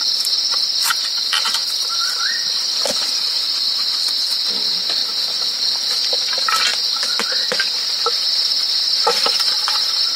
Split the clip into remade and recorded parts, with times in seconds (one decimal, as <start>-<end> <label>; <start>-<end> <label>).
0.0-10.2 recorded